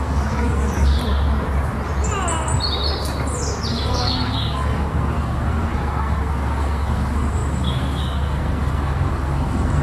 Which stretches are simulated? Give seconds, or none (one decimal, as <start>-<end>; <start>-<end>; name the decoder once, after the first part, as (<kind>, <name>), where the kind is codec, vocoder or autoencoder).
0.0-1.0 (codec, SNAC); 3.7-9.8